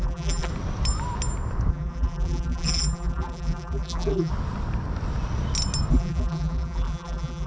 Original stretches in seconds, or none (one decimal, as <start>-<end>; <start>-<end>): 0.5-1.7; 4.3-5.9